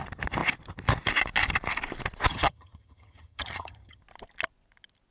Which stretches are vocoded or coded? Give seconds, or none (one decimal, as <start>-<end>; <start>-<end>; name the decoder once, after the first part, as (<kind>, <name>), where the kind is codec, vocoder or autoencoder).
2.3-4.0 (vocoder, HiFi-GAN)